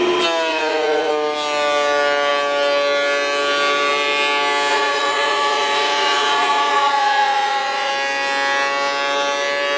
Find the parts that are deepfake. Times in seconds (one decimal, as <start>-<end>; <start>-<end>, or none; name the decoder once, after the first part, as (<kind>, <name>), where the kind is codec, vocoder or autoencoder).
0.5-1.1 (vocoder, Vocos); 4.7-7.9